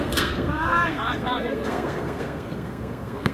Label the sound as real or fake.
fake